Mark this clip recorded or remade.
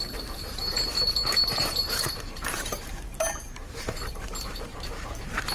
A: remade